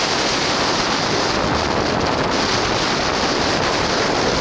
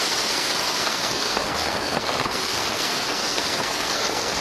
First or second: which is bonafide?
first